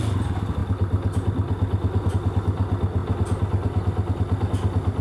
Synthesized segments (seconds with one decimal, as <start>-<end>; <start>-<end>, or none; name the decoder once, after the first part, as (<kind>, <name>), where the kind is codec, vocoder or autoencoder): none